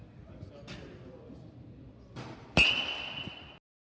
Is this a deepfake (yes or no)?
no